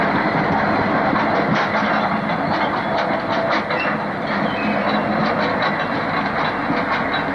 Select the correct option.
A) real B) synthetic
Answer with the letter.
A